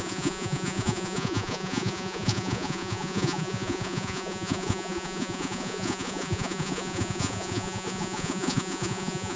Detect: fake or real fake